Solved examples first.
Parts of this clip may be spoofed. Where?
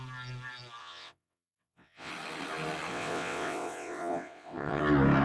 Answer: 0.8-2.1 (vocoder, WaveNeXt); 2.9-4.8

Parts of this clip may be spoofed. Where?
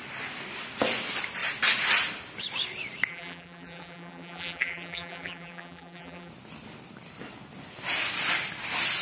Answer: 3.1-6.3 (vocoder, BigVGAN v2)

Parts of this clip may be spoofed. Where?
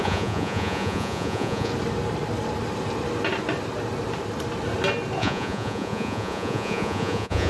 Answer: 0.0-1.7 (vocoder, Vocos); 5.2-7.5